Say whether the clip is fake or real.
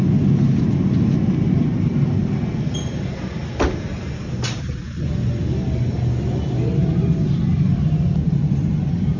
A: real